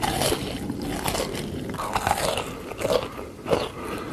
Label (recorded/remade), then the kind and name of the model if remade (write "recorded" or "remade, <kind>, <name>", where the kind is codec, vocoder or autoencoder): recorded